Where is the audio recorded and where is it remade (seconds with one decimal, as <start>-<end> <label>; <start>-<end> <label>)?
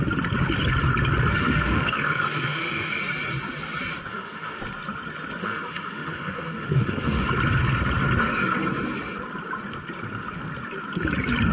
0.0-1.3 recorded; 1.3-3.0 remade; 3.0-4.1 recorded; 4.1-4.6 remade; 4.6-5.4 recorded; 5.4-7.3 remade; 7.3-11.5 recorded